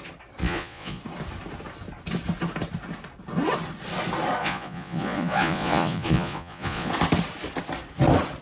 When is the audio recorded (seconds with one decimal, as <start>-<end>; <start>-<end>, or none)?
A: 0.0-0.4; 1.0-4.4; 6.9-8.4